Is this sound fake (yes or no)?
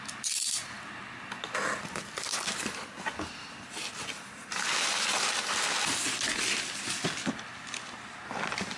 no